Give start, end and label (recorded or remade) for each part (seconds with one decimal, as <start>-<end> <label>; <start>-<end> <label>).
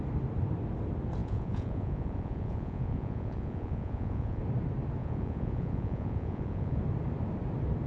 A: 0.0-1.2 recorded; 1.2-4.4 remade; 4.4-5.0 recorded; 5.0-6.8 remade; 6.8-7.9 recorded